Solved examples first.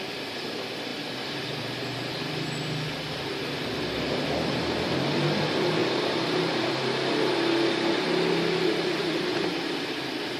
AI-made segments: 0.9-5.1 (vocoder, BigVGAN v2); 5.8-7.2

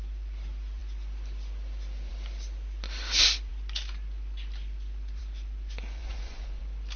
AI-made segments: 6.0-6.6 (vocoder, Vocos)

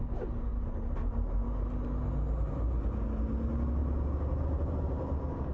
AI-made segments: none